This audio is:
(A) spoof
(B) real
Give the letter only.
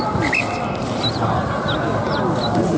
B